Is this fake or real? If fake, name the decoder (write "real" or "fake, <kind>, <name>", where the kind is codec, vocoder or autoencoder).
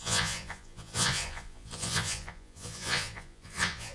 fake, vocoder, Vocos